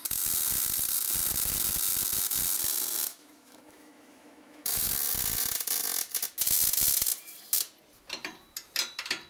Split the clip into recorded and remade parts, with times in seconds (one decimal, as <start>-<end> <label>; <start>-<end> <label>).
0.0-3.1 recorded; 3.1-4.9 remade; 4.9-9.3 recorded